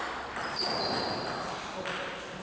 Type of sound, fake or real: real